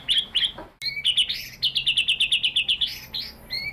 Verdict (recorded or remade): recorded